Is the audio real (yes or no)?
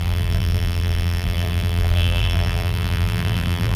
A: no